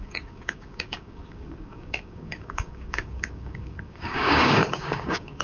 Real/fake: fake